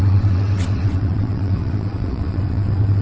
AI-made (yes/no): yes